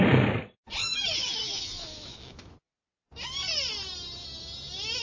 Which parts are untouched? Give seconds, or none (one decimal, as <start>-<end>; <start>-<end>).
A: 0.0-0.8; 2.5-5.0